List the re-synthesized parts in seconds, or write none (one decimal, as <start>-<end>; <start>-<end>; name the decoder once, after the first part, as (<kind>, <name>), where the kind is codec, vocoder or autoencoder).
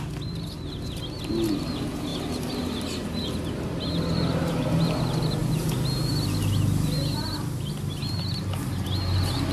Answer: none